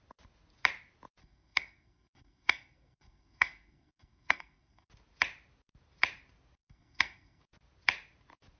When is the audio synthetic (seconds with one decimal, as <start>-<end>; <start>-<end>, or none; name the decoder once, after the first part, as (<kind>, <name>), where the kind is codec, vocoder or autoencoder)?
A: 1.2-4.9 (codec, SNAC); 6.6-7.4